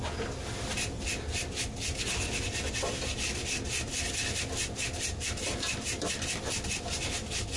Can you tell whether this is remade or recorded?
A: recorded